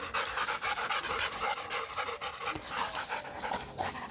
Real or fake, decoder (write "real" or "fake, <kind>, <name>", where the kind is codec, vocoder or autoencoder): real